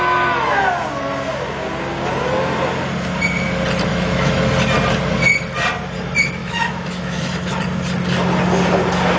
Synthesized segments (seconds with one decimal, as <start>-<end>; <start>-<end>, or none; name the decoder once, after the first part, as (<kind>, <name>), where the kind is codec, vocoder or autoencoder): 3.9-4.5 (autoencoder, DAC-VAE); 6.4-7.6